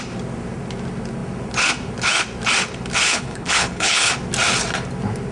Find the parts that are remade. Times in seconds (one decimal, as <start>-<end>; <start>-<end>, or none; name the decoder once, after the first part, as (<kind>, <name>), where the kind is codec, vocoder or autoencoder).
3.1-4.1 (codec, HILCodec)